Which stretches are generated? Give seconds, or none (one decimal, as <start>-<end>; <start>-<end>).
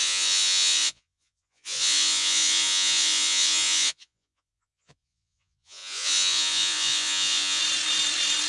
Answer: 0.0-7.6